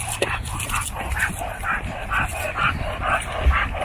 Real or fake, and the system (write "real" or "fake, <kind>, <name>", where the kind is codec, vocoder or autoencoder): real